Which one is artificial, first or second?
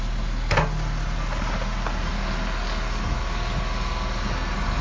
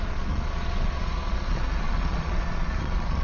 second